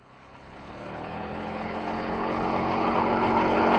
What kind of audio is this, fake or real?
fake